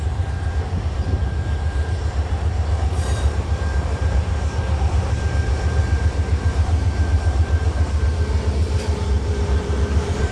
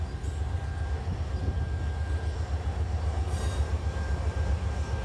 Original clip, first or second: second